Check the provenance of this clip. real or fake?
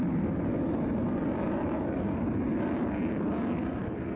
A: real